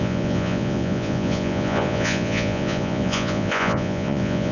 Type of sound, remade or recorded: remade